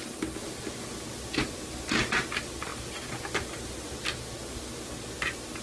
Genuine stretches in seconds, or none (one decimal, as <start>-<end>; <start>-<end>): 0.0-5.6